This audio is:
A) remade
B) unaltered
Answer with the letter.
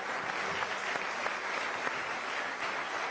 B